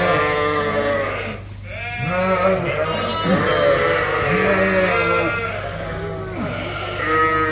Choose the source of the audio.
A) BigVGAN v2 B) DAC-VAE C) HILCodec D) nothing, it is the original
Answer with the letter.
D